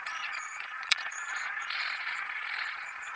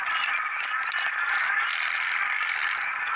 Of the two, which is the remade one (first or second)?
first